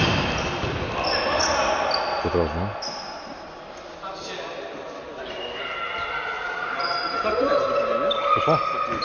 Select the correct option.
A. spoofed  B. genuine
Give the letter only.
B